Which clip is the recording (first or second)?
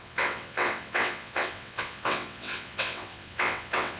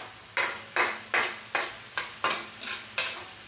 second